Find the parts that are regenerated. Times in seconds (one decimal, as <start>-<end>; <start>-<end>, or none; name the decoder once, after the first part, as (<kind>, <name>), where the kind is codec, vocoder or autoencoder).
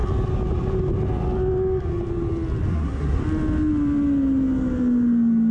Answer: 2.7-3.2 (codec, SNAC)